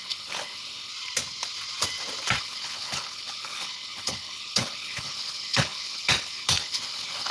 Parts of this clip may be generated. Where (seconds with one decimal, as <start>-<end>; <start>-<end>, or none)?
0.0-0.9; 2.4-7.3